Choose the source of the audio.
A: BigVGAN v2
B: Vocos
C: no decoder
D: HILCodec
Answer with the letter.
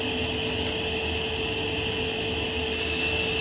C